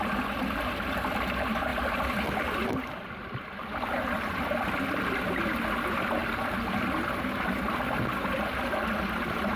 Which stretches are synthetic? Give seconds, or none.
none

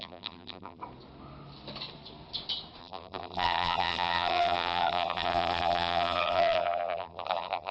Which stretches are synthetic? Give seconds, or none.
0.0-0.8 (vocoder, BigVGAN v2); 2.8-7.7

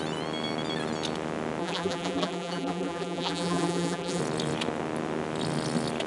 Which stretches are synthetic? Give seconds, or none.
1.6-4.2 (vocoder, BigVGAN v2)